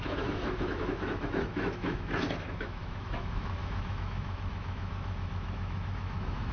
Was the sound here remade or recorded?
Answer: remade